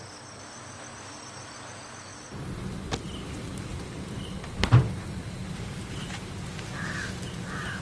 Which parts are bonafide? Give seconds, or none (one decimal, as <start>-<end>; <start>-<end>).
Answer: 0.0-3.7; 4.2-7.8